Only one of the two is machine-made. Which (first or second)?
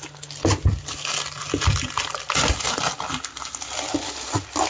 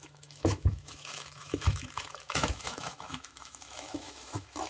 second